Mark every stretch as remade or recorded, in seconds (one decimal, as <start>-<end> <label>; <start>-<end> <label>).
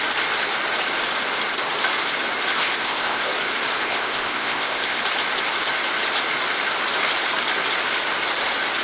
0.0-2.5 recorded; 2.5-3.3 remade; 3.3-3.8 recorded; 3.8-5.0 remade; 5.0-8.8 recorded